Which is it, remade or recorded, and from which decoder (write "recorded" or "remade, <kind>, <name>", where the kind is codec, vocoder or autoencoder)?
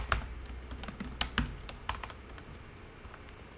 recorded